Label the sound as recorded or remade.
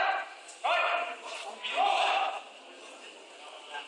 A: recorded